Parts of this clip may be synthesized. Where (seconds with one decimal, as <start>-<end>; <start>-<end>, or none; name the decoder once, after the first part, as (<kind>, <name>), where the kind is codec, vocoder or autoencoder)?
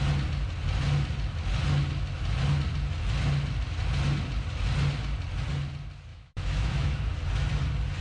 6.1-7.1 (autoencoder, DAC-VAE)